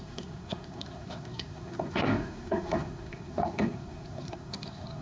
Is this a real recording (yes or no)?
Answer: no